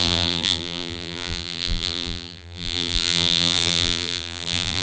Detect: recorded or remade remade